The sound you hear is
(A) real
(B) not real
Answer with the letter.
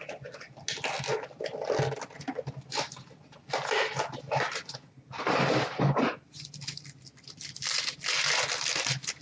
A